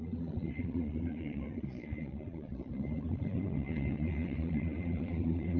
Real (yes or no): no